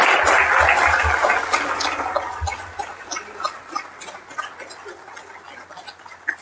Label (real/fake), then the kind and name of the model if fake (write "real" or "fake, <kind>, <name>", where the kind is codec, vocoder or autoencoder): real